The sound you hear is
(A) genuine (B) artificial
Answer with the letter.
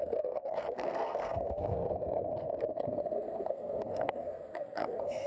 B